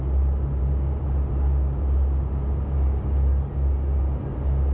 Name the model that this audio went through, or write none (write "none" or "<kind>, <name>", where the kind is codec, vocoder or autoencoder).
none